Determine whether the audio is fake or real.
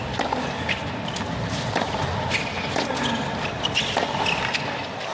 real